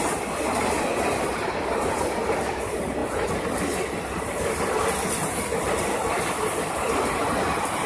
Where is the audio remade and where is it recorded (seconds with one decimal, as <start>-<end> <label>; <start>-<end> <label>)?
0.0-7.9 recorded